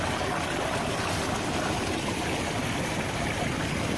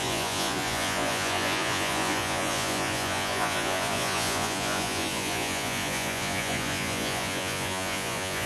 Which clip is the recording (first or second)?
first